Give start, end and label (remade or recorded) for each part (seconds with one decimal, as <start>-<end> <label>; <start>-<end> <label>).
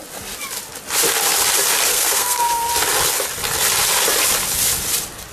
0.0-1.9 recorded; 1.9-2.7 remade; 2.7-5.3 recorded